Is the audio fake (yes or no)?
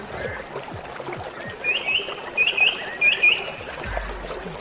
no